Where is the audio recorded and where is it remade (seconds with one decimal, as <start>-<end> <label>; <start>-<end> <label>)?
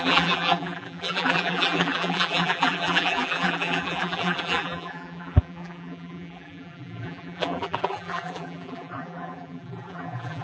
0.0-10.4 remade